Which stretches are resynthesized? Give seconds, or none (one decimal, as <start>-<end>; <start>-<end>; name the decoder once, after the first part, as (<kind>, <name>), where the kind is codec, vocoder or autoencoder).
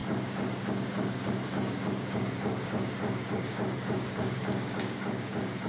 0.0-5.7 (codec, DAC)